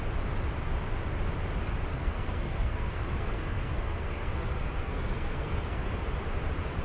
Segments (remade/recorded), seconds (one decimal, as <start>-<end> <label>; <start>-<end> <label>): 0.0-1.9 recorded; 1.9-6.0 remade; 6.0-6.8 recorded